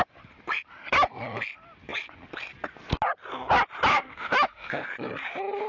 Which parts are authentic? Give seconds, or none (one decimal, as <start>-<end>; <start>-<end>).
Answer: 0.0-3.9; 4.9-5.7